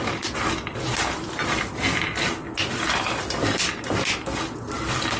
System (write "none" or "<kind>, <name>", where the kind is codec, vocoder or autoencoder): none